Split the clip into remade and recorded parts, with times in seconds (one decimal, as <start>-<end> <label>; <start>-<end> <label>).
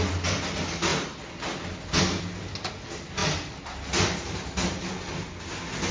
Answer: 0.0-5.9 recorded